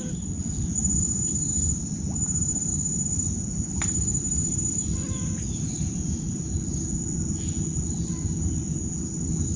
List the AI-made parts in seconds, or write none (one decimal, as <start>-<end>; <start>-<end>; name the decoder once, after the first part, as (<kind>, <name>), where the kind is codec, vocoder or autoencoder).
0.8-1.3 (vocoder, Vocos)